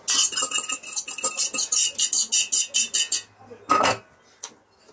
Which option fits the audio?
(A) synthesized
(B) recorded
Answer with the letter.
B